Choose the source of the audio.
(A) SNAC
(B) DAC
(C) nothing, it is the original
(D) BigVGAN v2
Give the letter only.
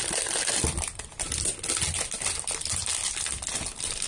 C